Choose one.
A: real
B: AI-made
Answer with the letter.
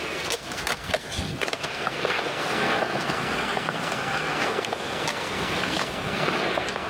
B